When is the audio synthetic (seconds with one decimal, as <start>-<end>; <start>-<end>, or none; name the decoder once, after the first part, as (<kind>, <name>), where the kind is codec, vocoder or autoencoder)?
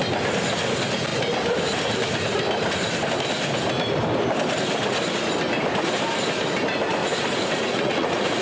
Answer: 7.0-8.4 (vocoder, Vocos)